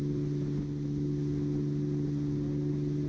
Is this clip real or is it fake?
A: real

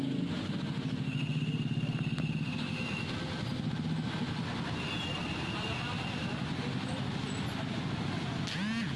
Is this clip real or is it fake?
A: real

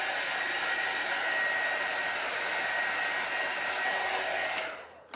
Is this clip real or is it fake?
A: real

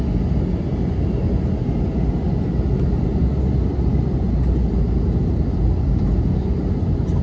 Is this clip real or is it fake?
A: real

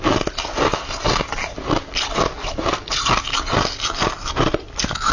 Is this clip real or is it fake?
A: real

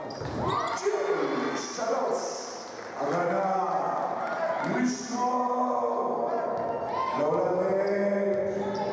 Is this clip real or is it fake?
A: real